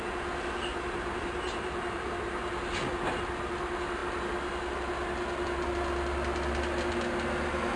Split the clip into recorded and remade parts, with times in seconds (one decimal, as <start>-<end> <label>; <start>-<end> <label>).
0.0-0.7 recorded; 0.7-2.3 remade; 2.3-7.8 recorded